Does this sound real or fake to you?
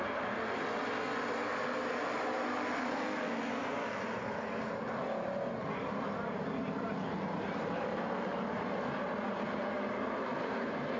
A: real